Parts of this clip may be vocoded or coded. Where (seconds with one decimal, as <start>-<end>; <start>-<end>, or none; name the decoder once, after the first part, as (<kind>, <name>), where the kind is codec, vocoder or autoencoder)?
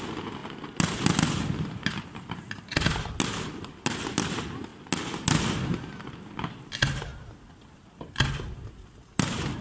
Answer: none